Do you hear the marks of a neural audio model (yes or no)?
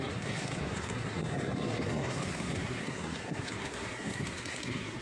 yes